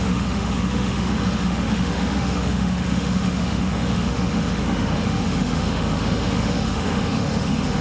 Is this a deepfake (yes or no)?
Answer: yes